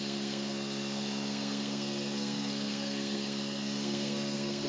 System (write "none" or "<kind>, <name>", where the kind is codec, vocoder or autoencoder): codec, SNAC